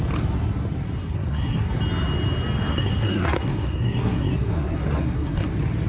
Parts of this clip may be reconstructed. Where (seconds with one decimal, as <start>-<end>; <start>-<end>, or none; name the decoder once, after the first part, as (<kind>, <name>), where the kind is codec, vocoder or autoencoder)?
1.0-1.7 (codec, SNAC); 2.7-5.5

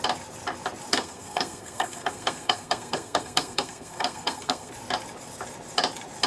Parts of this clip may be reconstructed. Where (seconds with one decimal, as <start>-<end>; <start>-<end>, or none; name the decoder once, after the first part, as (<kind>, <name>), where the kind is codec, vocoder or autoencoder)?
0.9-4.7 (codec, SNAC)